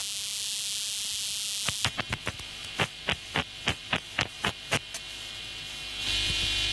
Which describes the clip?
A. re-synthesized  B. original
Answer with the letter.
B